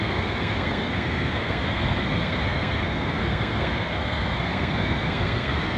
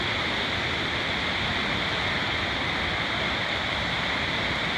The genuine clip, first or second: second